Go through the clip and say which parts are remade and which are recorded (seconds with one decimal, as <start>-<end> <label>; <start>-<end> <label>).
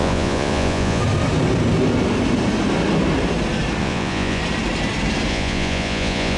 0.0-1.0 remade; 1.0-3.8 recorded; 3.8-4.4 remade; 4.4-5.3 recorded; 5.3-6.4 remade